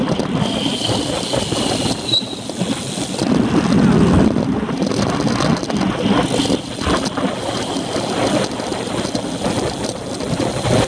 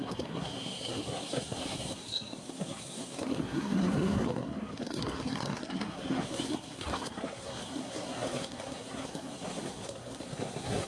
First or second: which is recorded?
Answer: first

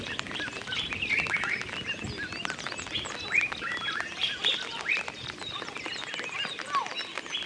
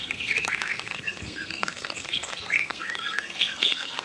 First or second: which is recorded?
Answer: first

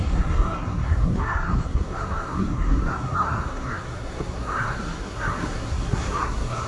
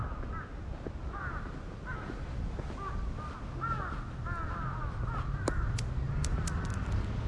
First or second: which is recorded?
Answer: second